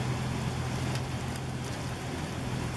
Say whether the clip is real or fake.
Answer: real